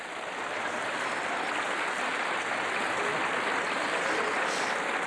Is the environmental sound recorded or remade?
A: recorded